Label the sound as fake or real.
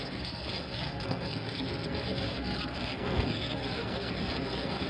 fake